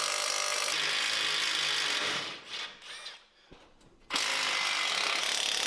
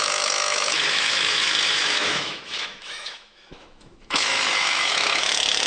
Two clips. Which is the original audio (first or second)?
first